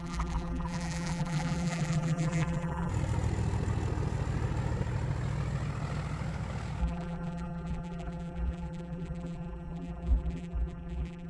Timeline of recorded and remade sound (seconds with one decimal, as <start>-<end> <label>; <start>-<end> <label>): 0.0-2.9 remade; 2.9-6.8 recorded; 6.8-11.3 remade